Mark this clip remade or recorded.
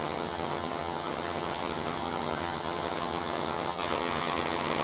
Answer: remade